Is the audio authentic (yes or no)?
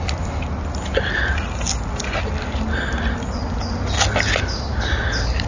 yes